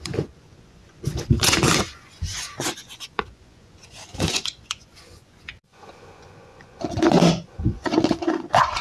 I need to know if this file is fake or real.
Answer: fake